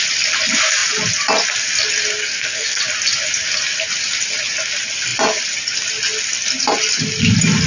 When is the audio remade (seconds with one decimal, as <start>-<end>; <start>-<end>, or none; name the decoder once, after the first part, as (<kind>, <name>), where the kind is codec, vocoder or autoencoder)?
2.2-2.8 (codec, SNAC)